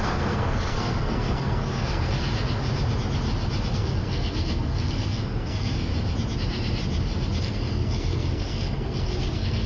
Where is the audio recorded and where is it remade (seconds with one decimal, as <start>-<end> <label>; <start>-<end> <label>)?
0.0-2.3 remade; 2.3-3.7 recorded; 3.7-5.9 remade; 5.9-7.4 recorded; 7.4-9.7 remade